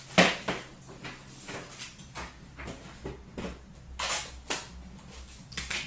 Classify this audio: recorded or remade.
recorded